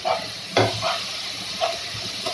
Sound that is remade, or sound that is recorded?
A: recorded